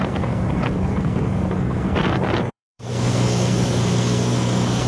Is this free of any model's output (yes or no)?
no